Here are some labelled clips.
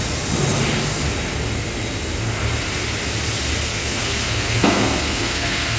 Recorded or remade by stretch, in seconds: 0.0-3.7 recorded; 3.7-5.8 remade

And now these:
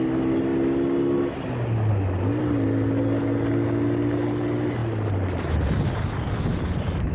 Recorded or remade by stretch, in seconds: 0.0-7.1 recorded

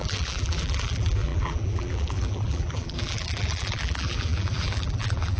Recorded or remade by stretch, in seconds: 0.0-5.4 remade

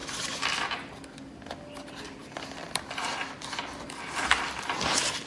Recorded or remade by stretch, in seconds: 0.0-5.3 recorded